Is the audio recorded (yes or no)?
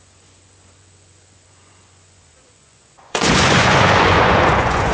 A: no